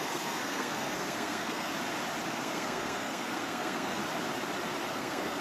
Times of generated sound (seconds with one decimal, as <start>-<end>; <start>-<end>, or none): 0.0-1.7; 2.3-4.0; 4.9-5.4